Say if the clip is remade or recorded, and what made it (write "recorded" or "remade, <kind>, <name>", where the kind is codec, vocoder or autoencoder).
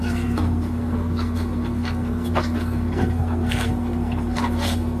remade, codec, SNAC